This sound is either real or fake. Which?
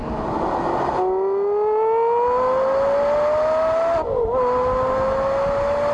real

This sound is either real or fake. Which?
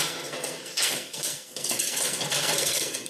fake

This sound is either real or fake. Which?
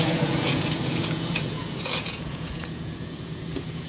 fake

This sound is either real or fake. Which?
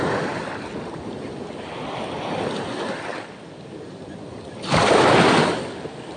real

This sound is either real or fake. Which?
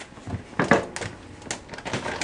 real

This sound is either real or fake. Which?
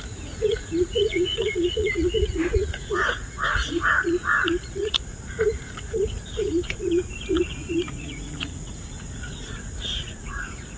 fake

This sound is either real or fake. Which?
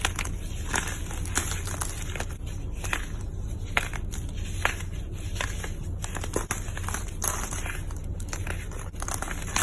real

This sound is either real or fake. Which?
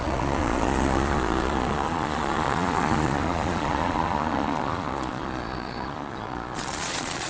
fake